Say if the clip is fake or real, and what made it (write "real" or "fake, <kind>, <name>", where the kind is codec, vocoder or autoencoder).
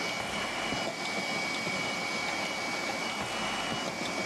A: real